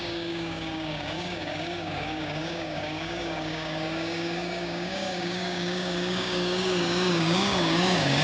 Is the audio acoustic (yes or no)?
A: no